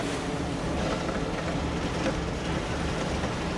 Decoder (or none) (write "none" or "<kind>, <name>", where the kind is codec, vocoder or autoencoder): none